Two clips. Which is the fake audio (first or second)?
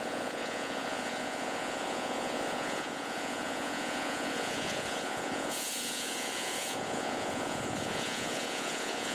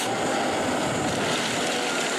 first